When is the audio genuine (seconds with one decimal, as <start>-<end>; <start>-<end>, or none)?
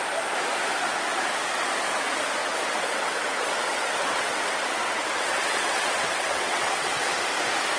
0.0-2.4; 7.1-7.8